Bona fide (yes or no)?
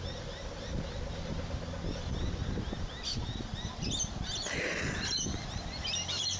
yes